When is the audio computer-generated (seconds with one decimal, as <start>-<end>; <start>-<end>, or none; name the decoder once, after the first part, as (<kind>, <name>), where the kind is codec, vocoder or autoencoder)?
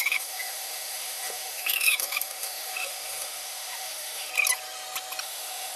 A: 0.0-4.3 (autoencoder, DAC-VAE); 5.2-5.8